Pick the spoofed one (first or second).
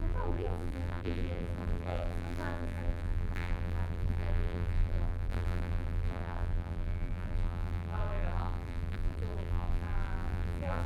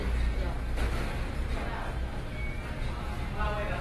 first